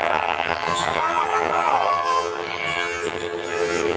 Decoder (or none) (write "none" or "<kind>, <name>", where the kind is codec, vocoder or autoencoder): vocoder, HiFi-GAN